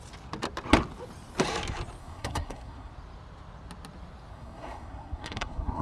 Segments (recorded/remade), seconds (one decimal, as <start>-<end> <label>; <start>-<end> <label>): 0.0-2.0 recorded; 2.0-2.9 remade; 2.9-4.3 recorded; 4.3-5.8 remade